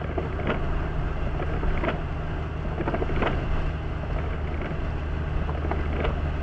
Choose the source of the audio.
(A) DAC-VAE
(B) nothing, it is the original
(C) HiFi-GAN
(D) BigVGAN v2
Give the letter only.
B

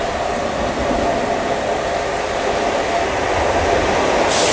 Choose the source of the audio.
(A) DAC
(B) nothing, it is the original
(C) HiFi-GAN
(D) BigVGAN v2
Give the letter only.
B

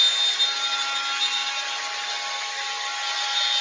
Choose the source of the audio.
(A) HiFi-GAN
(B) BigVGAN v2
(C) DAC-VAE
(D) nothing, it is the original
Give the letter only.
D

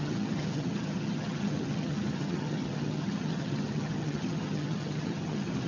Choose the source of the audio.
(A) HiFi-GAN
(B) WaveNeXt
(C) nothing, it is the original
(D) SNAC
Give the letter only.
A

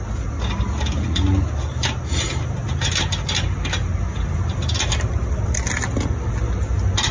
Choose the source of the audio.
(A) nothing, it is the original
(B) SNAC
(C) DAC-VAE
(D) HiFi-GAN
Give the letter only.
A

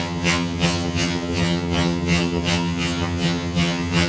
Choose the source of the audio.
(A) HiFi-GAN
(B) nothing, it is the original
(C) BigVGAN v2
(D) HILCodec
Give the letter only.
A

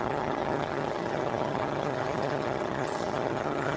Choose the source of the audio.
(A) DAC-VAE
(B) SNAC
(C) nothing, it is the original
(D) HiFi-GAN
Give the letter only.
D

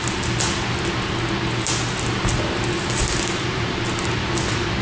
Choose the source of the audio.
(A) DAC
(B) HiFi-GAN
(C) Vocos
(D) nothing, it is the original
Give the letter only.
D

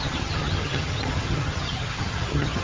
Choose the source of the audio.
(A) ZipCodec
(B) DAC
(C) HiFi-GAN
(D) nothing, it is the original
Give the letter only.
C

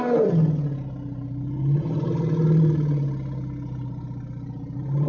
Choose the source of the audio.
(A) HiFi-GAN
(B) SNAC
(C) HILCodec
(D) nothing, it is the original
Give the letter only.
D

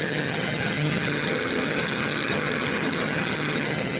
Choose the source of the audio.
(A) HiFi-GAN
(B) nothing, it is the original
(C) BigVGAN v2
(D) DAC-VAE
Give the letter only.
A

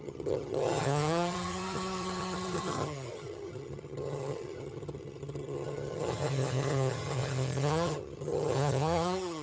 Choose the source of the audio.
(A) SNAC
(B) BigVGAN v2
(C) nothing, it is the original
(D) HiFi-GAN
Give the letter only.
D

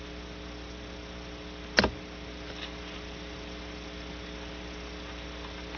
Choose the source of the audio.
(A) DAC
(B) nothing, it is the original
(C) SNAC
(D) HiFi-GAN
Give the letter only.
B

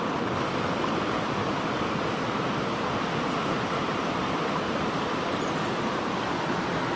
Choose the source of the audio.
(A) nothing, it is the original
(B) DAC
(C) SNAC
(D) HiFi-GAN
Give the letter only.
A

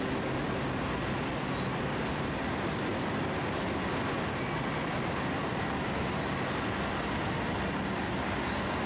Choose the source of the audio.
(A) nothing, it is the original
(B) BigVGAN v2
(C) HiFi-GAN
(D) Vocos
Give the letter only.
A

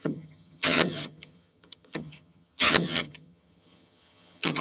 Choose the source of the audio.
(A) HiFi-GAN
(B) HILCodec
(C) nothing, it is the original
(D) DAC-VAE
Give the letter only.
A